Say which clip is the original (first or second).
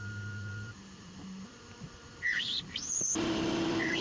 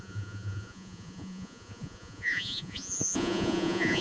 first